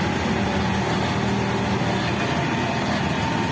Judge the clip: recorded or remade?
recorded